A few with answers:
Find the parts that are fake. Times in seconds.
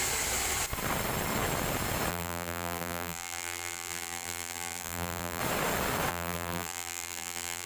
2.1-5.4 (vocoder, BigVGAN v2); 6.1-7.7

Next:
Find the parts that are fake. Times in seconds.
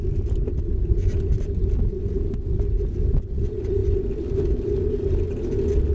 none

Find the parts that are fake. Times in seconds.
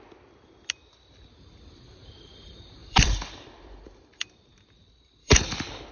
2.8-4.3 (vocoder, BigVGAN v2); 5.2-5.9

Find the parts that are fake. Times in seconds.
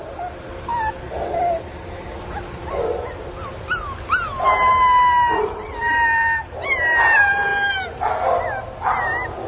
none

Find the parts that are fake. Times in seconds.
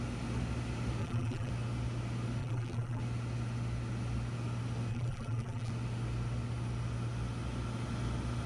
1.0-1.5 (vocoder, BigVGAN v2); 2.4-3.0; 4.9-5.7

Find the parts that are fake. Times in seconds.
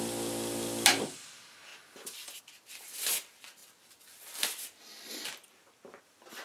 none